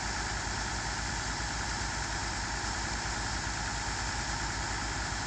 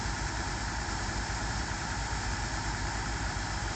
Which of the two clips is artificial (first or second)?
second